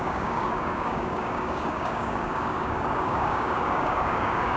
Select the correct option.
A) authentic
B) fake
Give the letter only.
B